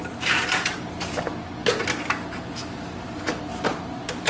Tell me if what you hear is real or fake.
real